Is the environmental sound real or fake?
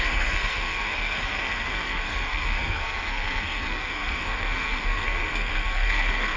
fake